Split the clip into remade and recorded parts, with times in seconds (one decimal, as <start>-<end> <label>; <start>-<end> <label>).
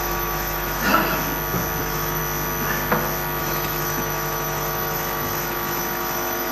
0.0-0.9 remade; 0.9-1.8 recorded; 1.8-2.2 remade; 2.2-3.4 recorded; 3.4-6.5 remade